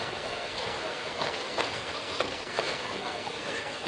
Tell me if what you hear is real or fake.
fake